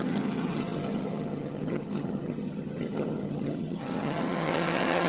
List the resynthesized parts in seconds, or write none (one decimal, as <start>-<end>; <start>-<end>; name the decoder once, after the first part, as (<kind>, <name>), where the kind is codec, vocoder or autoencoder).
0.0-5.1 (vocoder, HiFi-GAN)